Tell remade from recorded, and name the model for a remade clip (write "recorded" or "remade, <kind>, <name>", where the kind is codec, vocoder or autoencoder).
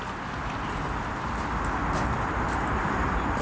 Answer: recorded